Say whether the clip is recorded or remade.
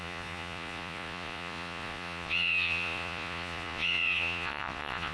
remade